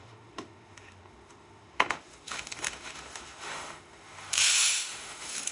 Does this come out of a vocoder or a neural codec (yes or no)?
yes